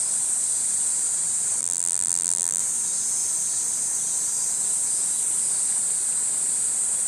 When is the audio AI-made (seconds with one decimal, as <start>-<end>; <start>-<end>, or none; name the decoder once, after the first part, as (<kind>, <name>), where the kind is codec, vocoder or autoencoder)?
1.6-2.6 (vocoder, BigVGAN v2)